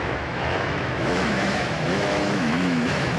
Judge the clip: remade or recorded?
remade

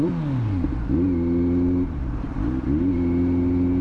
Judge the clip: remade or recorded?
recorded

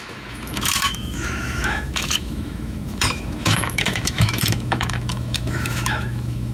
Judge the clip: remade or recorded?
remade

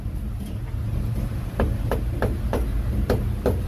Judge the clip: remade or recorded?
recorded